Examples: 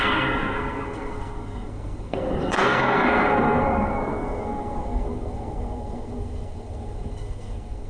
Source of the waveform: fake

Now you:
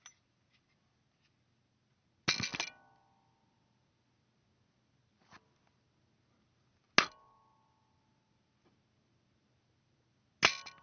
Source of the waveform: real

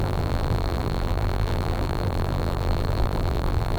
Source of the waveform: fake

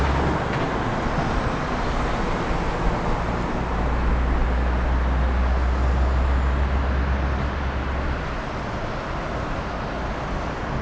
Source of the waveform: real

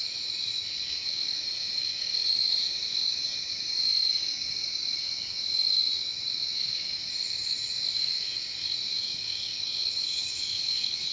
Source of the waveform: fake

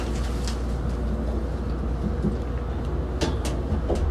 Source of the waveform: real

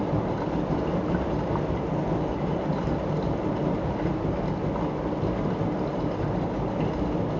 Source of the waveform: real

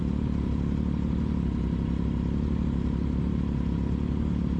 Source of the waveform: real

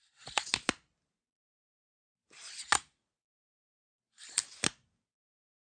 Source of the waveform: real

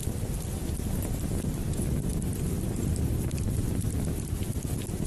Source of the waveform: fake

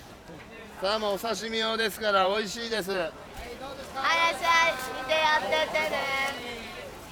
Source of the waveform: fake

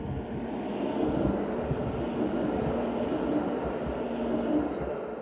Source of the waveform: real